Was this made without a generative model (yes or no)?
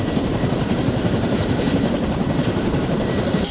no